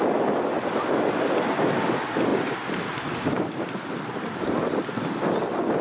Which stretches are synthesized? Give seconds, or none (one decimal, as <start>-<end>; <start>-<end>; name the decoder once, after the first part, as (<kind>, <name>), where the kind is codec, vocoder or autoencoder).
none